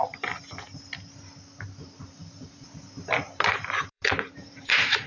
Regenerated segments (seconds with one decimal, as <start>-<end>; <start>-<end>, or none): 1.7-5.1